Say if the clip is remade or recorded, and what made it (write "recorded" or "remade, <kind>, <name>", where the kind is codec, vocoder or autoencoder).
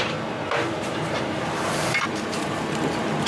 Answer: remade, vocoder, BigVGAN v2